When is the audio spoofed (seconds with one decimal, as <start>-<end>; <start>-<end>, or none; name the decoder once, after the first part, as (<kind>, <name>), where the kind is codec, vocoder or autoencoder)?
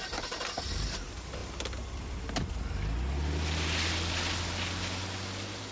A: none